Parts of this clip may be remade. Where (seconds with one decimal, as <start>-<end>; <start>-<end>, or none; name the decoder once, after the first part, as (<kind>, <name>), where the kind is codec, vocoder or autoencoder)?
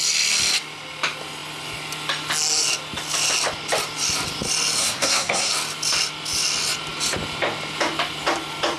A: 4.8-5.5 (codec, SNAC)